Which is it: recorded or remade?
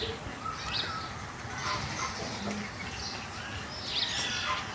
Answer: recorded